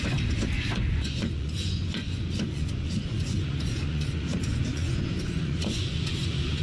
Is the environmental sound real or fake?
fake